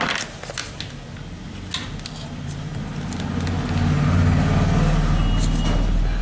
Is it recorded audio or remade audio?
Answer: recorded